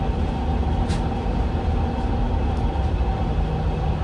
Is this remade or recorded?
recorded